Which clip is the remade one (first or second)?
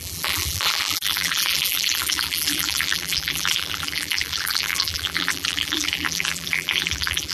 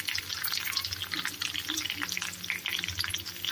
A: first